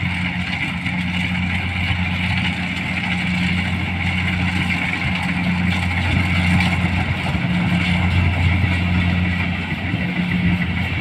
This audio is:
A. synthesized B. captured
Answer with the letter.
B